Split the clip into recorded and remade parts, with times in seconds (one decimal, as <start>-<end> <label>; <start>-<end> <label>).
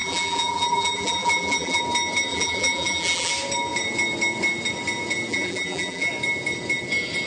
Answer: 0.0-1.8 remade; 1.8-2.3 recorded; 2.3-3.3 remade; 3.3-5.3 recorded; 5.3-6.1 remade; 6.1-7.3 recorded